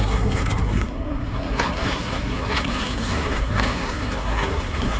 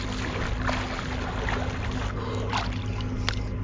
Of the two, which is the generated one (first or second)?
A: first